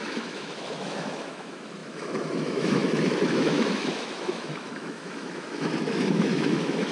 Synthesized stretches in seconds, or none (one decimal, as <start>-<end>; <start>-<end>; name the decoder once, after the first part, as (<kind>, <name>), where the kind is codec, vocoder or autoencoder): 0.0-6.9 (autoencoder, DAC-VAE)